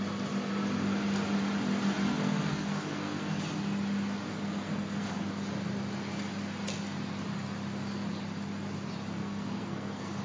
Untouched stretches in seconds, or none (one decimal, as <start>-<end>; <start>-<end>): 0.0-2.1; 3.4-4.3; 5.3-9.2

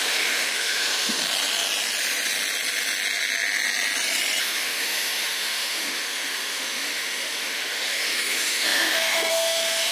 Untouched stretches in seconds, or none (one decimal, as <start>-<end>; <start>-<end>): 1.2-4.4

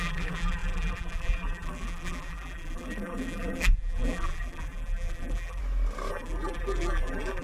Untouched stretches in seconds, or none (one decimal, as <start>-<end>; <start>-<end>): 5.6-6.1

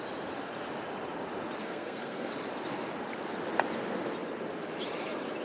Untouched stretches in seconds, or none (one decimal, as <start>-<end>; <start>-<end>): 0.0-1.6; 2.3-5.4

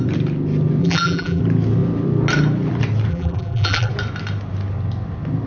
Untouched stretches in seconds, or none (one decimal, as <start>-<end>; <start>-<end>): 0.0-0.8; 1.4-3.1; 3.9-5.5

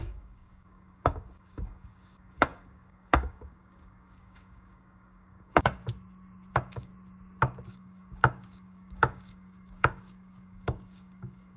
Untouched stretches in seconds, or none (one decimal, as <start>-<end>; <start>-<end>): 5.8-6.5; 6.9-7.7

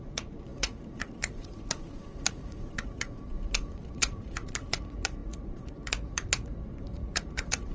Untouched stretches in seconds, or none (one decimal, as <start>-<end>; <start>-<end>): none

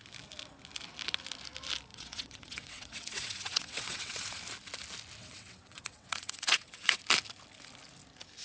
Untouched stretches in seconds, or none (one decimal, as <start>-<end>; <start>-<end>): 0.0-1.9; 4.4-5.2; 7.0-8.4